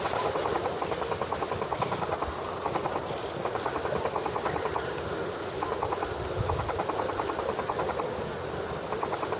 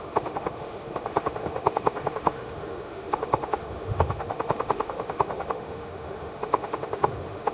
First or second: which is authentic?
first